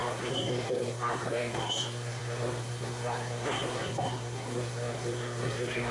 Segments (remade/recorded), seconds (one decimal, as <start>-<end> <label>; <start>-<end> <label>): 0.0-5.9 remade